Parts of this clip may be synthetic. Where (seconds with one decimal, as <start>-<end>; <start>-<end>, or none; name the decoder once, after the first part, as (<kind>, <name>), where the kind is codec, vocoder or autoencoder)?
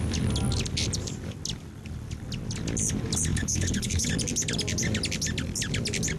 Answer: 3.3-4.1 (codec, HILCodec)